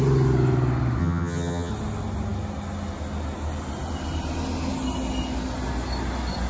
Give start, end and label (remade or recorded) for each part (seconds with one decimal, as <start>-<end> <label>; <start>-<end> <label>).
0.0-1.0 recorded; 1.0-1.7 remade; 1.7-6.5 recorded

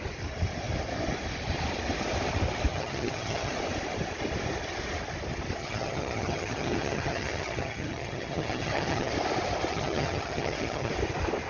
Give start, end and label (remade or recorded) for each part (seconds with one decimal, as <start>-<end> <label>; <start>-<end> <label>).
0.0-2.7 recorded; 2.7-3.5 remade; 3.5-5.6 recorded; 5.6-9.1 remade; 9.1-9.7 recorded; 9.7-10.9 remade; 10.9-11.5 recorded

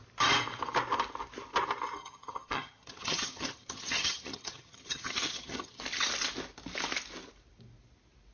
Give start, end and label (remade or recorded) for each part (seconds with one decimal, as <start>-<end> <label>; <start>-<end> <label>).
0.0-2.0 recorded; 2.0-5.8 remade; 5.8-8.3 recorded

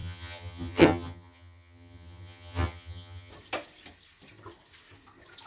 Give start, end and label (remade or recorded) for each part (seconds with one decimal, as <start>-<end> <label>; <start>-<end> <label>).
0.0-3.3 remade; 3.3-5.5 recorded

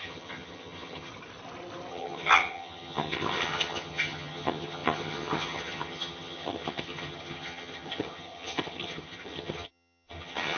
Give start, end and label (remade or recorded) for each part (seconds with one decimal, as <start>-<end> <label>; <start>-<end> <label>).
0.0-1.1 remade; 1.1-1.9 recorded; 1.9-10.6 remade

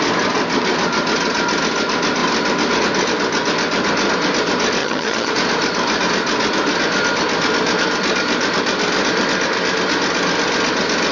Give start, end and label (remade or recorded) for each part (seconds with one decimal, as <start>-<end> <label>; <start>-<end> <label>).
0.0-4.8 recorded; 4.8-5.3 remade; 5.3-11.1 recorded